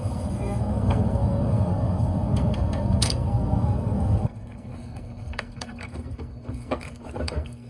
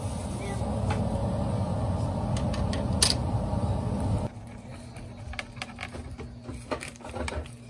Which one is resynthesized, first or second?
first